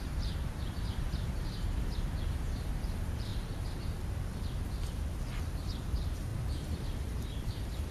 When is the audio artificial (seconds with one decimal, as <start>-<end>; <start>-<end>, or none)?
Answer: 0.0-3.3; 5.5-6.3; 7.0-7.9